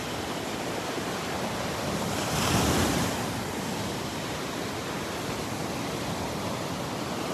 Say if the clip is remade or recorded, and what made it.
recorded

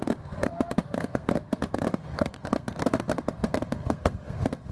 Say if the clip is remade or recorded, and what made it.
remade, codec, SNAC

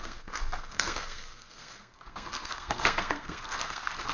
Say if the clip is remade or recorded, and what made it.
remade, codec, SNAC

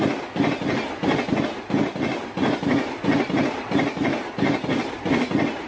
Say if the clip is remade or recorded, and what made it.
recorded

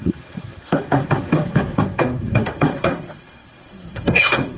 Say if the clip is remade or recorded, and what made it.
remade, codec, SNAC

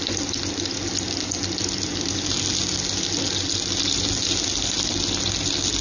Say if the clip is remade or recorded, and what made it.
recorded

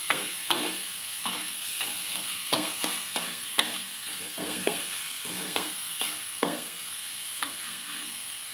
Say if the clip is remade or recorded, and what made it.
remade, codec, SNAC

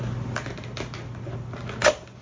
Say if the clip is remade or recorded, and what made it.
recorded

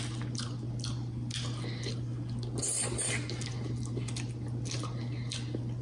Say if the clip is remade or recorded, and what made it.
recorded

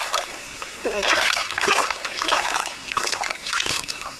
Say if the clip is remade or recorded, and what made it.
remade, codec, SNAC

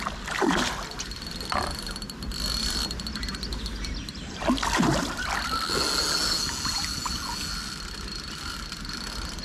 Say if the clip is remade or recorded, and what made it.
recorded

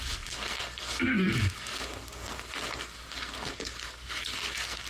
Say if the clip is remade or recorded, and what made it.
remade, codec, SNAC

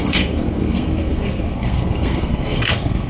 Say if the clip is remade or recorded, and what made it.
remade, codec, SNAC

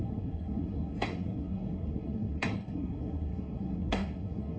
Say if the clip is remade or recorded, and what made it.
remade, codec, SNAC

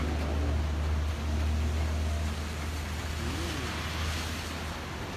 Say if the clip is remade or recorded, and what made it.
recorded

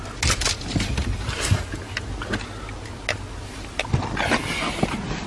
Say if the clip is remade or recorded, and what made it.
recorded